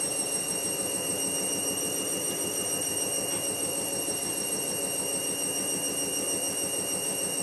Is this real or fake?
real